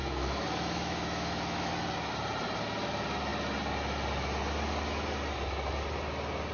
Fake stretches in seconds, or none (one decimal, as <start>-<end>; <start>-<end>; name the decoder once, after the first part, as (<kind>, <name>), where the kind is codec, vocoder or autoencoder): 0.0-1.7 (autoencoder, DAC-VAE)